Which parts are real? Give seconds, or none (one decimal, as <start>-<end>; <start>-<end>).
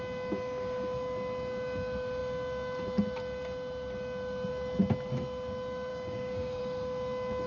0.0-5.9; 6.6-7.5